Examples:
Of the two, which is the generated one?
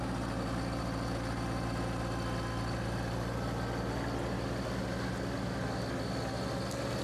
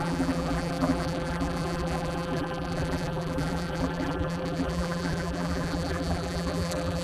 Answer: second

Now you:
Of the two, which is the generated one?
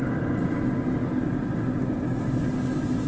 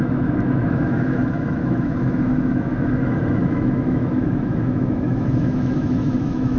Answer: second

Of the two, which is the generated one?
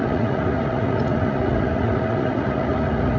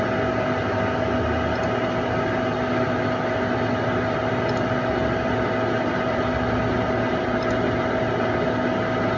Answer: first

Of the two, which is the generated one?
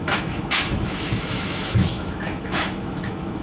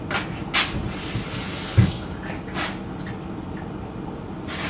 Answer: first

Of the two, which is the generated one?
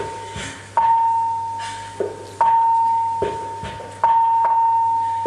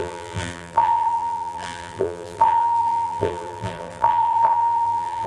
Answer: second